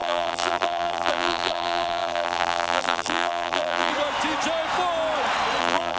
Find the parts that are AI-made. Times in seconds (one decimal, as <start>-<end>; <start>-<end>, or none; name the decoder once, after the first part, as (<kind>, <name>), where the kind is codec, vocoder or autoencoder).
0.0-3.9 (vocoder, BigVGAN v2); 5.6-6.0